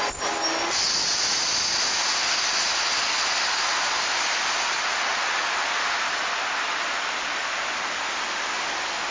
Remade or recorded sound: recorded